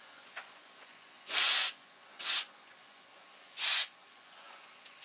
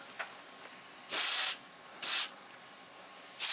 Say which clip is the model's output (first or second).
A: first